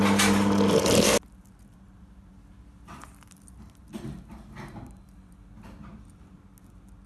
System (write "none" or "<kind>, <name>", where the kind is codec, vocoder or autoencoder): none